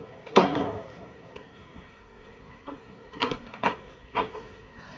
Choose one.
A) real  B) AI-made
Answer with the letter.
B